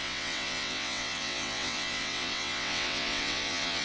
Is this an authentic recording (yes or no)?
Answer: no